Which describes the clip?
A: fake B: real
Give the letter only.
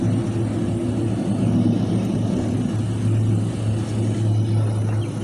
B